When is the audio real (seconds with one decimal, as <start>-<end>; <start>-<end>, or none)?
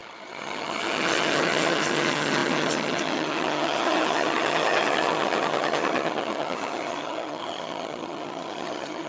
none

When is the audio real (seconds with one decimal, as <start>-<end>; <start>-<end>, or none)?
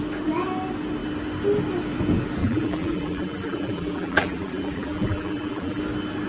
0.0-2.4; 5.8-6.3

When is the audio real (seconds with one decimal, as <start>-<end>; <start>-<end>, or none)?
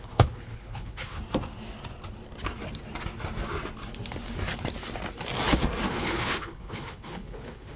1.2-5.9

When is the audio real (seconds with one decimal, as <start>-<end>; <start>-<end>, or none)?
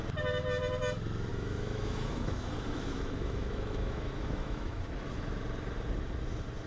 0.0-1.3; 4.8-6.7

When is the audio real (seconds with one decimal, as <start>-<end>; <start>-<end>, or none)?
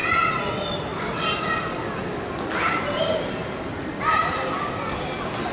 0.0-5.5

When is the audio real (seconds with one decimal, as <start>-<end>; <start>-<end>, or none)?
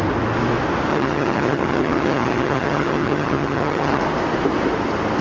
0.0-0.9; 4.0-5.2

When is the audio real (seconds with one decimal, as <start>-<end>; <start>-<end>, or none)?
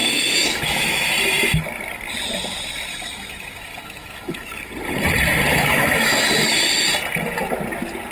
1.1-2.9; 4.7-5.5; 6.6-8.1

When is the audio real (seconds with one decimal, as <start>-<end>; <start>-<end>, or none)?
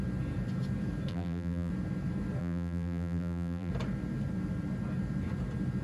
0.0-1.1; 1.7-2.4; 3.7-5.8